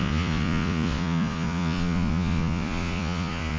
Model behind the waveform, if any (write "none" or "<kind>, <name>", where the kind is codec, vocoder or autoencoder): vocoder, Vocos